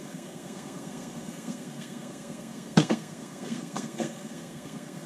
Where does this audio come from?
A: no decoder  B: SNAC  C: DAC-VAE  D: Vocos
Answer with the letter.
B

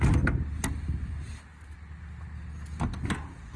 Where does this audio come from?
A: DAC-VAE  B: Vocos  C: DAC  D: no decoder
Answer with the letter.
D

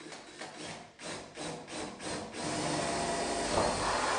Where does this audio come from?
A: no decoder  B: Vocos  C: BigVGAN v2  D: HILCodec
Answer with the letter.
A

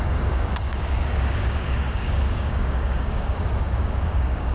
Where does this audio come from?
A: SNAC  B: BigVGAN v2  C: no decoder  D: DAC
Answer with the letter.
D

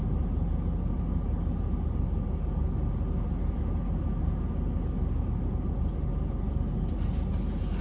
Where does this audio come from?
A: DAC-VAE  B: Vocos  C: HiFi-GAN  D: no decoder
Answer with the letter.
D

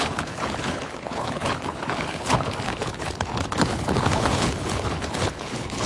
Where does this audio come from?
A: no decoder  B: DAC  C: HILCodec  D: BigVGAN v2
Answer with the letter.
C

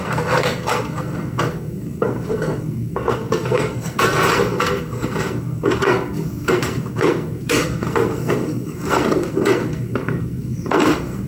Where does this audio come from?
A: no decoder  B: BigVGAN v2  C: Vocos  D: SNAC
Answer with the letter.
D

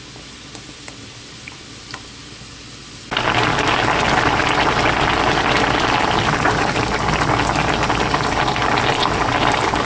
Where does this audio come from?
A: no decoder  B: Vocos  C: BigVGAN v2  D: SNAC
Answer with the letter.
A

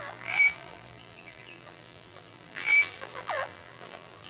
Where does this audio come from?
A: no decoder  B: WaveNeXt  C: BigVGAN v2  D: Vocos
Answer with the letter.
C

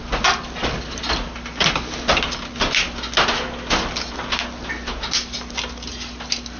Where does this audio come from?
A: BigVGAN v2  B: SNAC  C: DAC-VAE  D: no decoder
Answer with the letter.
D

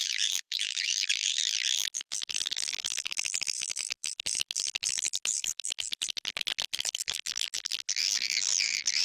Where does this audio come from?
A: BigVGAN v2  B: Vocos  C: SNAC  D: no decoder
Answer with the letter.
A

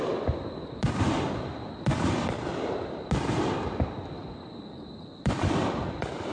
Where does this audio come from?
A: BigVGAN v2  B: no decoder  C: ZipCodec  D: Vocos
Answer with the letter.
A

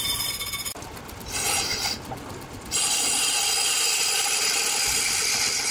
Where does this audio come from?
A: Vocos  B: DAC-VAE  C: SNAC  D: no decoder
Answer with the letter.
D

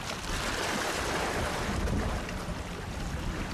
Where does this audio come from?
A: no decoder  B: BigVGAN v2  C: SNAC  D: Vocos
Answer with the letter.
A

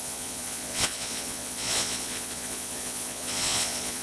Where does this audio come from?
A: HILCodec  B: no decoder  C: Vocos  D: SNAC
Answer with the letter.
C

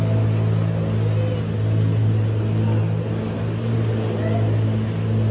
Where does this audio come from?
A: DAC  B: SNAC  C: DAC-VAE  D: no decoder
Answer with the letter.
D